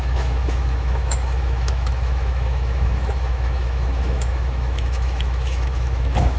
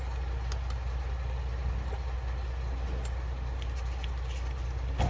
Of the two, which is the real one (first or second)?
second